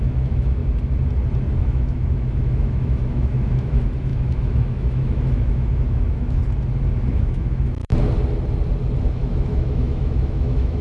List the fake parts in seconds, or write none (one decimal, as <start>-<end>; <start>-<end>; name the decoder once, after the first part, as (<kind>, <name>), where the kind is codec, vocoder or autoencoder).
0.0-0.6 (autoencoder, DAC-VAE); 1.6-6.4; 7.1-7.9; 9.1-10.8